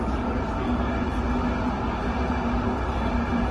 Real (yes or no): yes